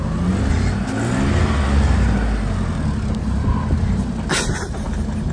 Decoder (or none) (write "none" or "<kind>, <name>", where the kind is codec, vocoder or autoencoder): none